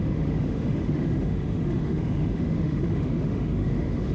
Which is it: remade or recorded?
remade